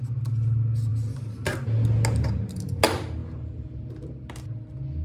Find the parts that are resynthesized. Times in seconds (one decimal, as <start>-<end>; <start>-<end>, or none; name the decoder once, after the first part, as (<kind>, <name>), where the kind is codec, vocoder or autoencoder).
3.2-3.9 (vocoder, Vocos)